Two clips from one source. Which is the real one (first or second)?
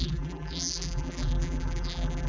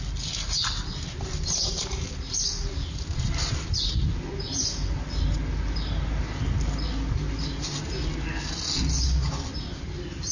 second